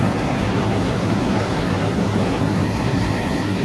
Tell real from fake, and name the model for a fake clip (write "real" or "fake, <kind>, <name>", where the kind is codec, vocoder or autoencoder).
fake, codec, SNAC